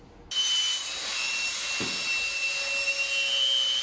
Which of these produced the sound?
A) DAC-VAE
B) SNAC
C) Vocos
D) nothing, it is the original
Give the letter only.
D